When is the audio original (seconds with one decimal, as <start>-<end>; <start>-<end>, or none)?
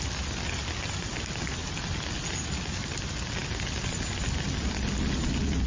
0.0-5.7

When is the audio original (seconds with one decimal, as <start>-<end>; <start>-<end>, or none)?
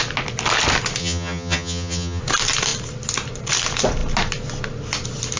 0.0-1.0; 2.2-5.4